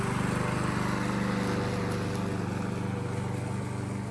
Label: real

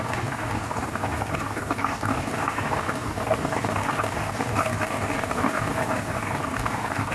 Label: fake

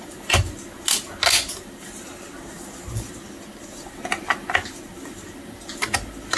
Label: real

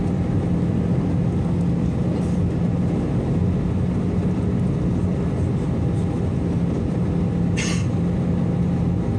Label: real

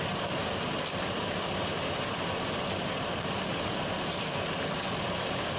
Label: fake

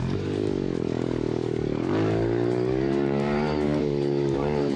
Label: fake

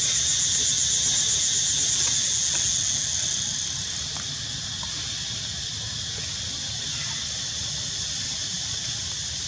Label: real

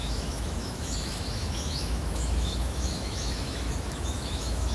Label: fake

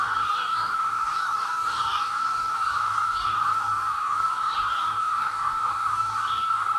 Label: fake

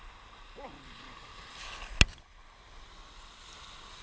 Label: real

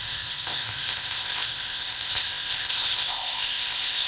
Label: fake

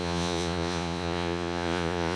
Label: fake